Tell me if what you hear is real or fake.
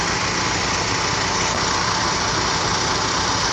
real